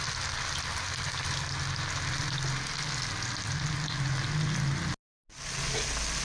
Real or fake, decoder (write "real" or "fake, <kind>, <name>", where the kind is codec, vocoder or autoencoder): real